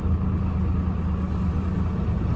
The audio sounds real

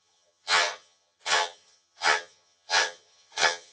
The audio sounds fake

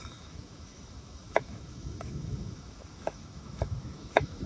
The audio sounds fake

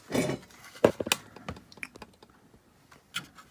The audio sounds real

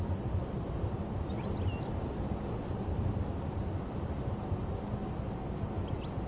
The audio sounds real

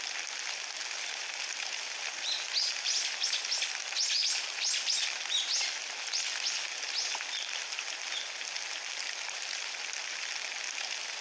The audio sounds real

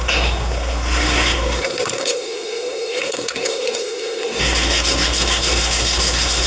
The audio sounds fake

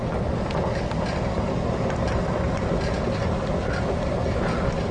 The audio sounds real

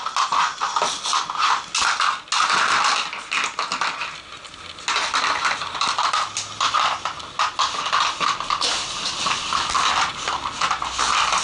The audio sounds real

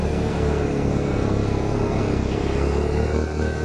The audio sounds fake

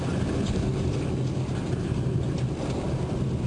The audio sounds real